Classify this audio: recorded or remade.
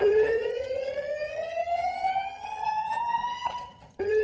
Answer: remade